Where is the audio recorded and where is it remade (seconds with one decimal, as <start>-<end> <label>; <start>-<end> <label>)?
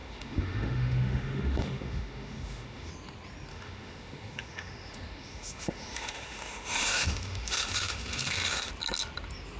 0.0-2.9 remade; 2.9-3.5 recorded; 3.5-8.7 remade; 8.7-9.6 recorded